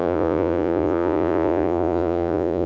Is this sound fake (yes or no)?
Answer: yes